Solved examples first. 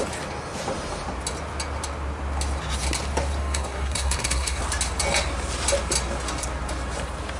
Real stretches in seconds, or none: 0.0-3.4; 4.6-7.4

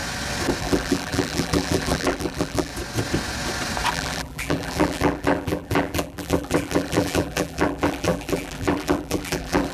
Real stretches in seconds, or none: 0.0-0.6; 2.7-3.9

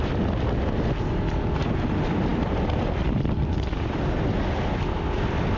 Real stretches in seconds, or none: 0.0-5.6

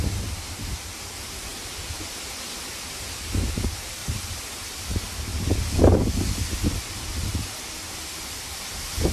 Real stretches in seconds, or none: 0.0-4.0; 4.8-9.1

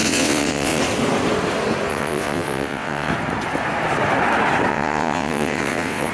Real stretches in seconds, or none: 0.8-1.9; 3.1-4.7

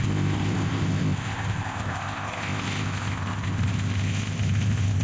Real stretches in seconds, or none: none

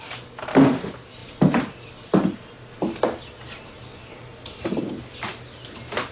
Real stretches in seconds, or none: 0.0-6.1

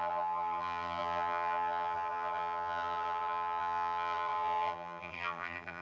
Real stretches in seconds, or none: none